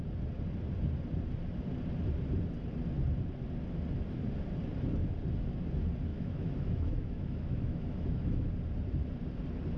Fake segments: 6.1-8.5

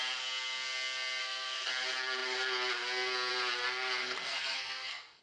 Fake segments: 1.2-1.7; 4.0-5.2

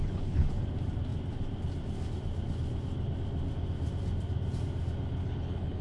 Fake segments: 0.0-0.6; 5.2-5.8